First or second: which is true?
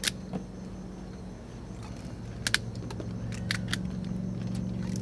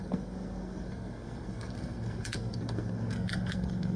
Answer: first